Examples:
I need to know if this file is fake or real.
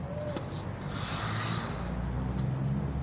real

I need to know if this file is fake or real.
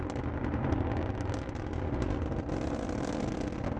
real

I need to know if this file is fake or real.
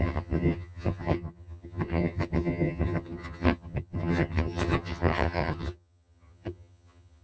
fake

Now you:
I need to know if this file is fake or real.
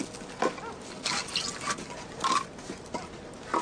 real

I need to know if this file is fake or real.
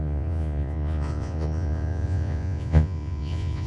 fake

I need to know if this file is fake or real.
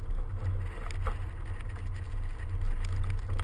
real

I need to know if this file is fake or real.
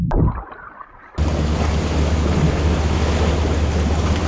real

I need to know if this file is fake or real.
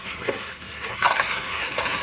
fake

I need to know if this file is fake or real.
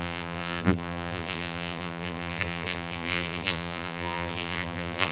fake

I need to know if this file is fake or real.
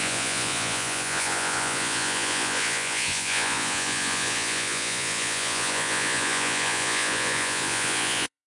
fake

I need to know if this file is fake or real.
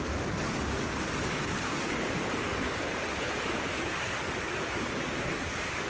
fake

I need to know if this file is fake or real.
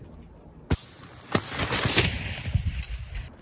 real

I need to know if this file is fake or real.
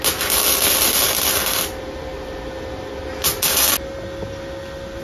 real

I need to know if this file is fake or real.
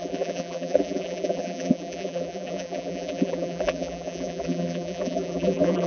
fake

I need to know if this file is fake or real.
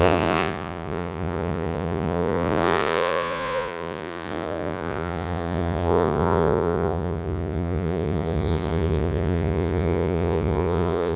fake